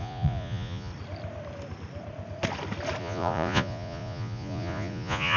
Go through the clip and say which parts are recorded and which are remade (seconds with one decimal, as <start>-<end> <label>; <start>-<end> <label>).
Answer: 0.0-0.9 remade; 0.9-3.0 recorded; 3.0-5.4 remade